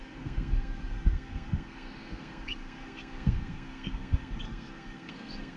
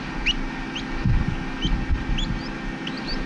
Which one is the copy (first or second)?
first